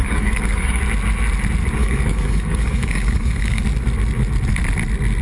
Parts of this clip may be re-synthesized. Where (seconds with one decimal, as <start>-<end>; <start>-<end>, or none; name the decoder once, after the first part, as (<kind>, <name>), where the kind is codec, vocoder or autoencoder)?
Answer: 0.0-0.8 (codec, DAC); 1.8-3.6